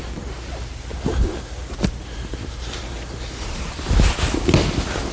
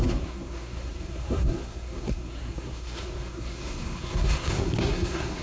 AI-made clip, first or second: second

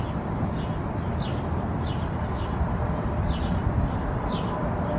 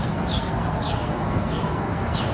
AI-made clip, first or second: second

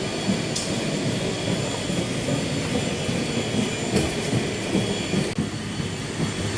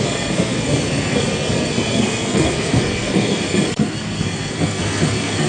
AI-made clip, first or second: second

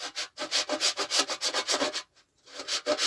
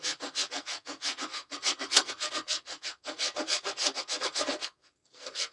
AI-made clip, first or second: second